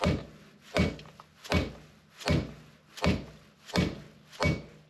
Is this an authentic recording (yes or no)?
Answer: yes